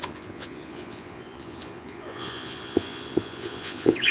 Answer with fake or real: fake